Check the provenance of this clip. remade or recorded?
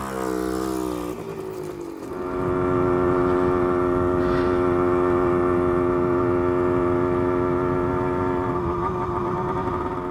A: recorded